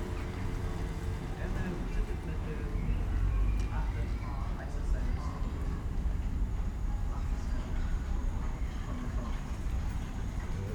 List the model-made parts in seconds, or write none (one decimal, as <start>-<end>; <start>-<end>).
0.0-4.1; 5.1-10.7

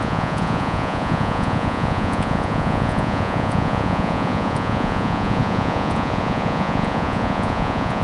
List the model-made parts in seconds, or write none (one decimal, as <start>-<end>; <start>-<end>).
0.0-8.0

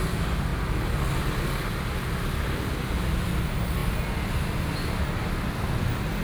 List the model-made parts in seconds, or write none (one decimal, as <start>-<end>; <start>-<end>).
none

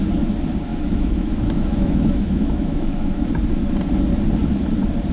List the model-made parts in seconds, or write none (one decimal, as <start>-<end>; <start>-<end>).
0.7-3.3

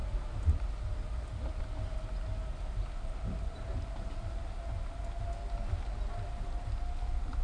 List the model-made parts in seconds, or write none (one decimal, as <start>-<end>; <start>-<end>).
none

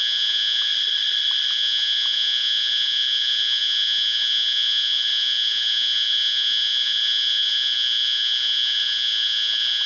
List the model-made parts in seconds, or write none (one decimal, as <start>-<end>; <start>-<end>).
0.0-0.7; 1.5-9.9

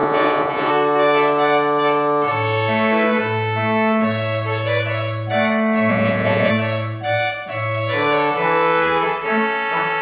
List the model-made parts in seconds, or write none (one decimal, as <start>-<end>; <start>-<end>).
0.0-0.7; 5.9-6.5

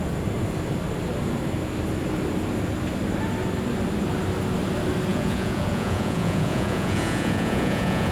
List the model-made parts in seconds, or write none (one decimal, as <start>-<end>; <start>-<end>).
5.1-8.1